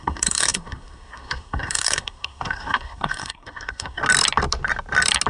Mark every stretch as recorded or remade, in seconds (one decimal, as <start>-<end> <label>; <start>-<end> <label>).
0.0-4.0 remade; 4.0-5.3 recorded

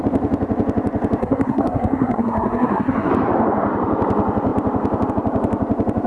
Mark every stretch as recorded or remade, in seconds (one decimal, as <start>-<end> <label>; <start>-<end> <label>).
0.0-1.2 recorded; 1.2-3.1 remade; 3.1-6.1 recorded